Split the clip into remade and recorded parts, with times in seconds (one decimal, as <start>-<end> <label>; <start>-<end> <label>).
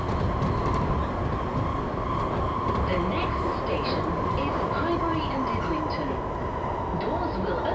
0.0-7.7 recorded